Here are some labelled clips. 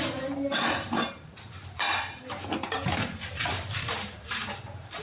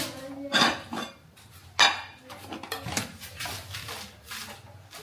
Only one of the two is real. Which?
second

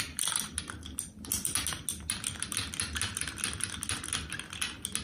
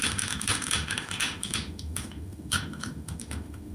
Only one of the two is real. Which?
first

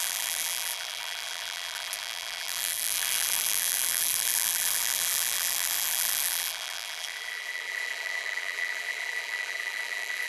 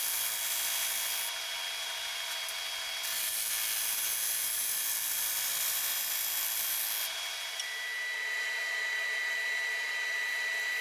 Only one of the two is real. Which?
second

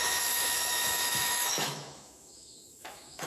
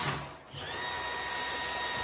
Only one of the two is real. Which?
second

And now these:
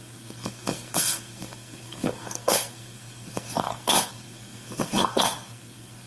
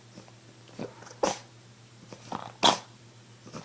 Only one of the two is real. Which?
second